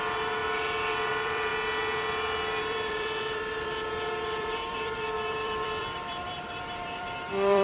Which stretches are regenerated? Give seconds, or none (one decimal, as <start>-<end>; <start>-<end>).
0.0-0.4; 1.1-1.5; 2.6-7.6